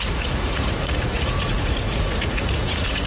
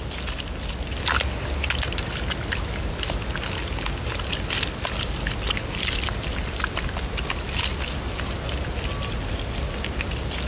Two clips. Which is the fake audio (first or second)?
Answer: first